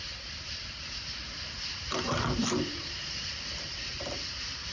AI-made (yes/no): yes